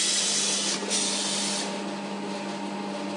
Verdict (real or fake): real